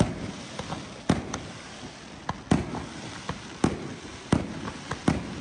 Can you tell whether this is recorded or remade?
recorded